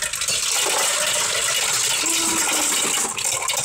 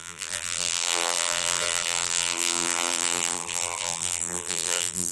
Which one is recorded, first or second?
first